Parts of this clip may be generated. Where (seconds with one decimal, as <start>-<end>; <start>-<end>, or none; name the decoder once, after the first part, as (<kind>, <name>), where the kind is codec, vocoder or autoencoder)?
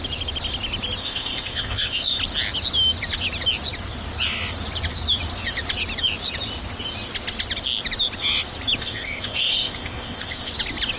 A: 1.0-2.2 (codec, ZipCodec); 8.8-10.5